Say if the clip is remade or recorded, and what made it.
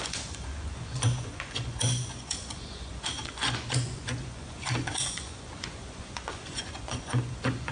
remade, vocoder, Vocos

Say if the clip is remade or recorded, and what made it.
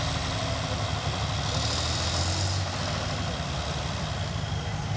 recorded